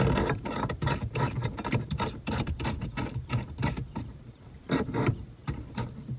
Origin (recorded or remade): remade